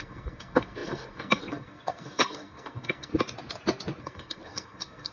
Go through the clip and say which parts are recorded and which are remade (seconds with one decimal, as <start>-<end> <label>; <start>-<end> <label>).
0.0-3.1 remade; 3.1-4.0 recorded; 4.0-5.1 remade